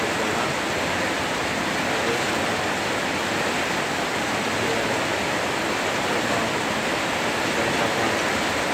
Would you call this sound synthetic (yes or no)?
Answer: no